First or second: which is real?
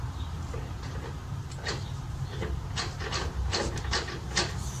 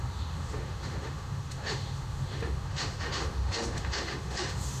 first